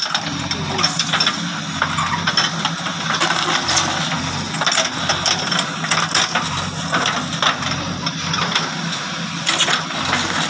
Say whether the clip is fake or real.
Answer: real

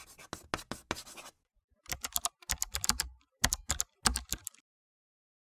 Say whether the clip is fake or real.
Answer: real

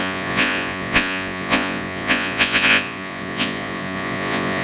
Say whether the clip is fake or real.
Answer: fake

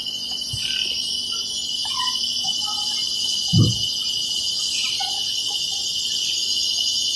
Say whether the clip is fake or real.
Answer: real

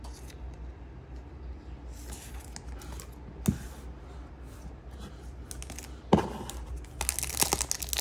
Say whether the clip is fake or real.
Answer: real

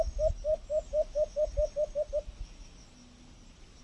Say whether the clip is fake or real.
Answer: real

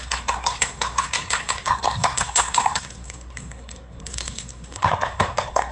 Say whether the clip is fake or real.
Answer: fake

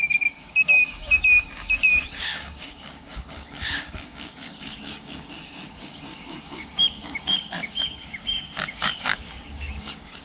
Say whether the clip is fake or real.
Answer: fake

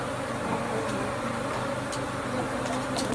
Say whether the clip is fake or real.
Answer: real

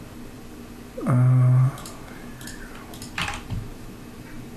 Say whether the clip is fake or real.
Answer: real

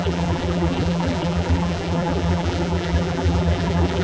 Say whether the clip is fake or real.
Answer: fake